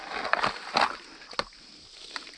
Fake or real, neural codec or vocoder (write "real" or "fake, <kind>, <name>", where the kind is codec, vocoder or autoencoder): real